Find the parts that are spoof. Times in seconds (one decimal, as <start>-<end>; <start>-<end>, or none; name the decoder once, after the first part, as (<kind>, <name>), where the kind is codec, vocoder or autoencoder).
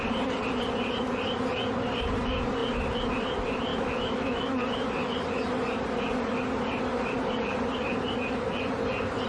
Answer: 3.7-4.5 (autoencoder, DAC-VAE)